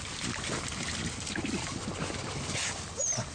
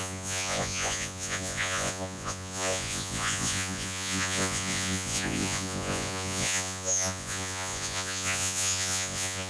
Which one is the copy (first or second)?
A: second